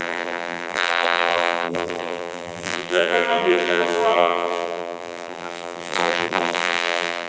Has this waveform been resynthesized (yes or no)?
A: yes